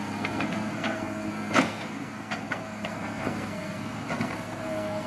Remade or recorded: remade